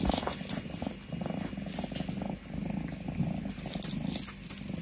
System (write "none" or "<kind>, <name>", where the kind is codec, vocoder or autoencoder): none